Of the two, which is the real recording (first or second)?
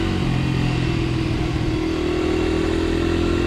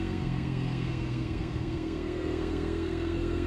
first